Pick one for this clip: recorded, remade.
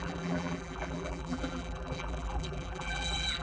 remade